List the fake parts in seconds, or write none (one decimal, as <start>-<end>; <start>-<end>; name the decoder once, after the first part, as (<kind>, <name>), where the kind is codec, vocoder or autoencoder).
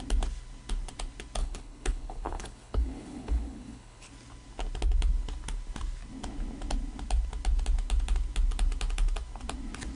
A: 1.4-4.1 (codec, HILCodec)